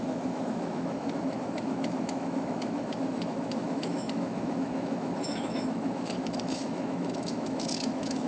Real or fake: fake